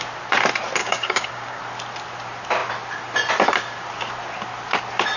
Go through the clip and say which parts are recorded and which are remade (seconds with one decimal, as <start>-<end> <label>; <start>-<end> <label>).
0.0-0.8 recorded; 0.8-1.6 remade; 1.6-5.2 recorded